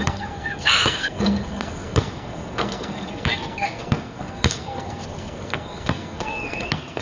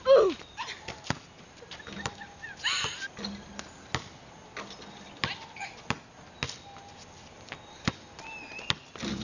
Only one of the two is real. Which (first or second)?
second